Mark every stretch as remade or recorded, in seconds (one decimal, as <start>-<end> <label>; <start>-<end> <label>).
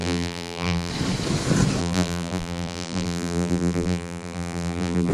0.0-0.9 remade; 0.9-1.8 recorded; 1.8-5.1 remade